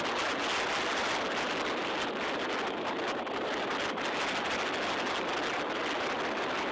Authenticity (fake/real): real